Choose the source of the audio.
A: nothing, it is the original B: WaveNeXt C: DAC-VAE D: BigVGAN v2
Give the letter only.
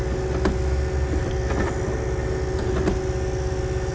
A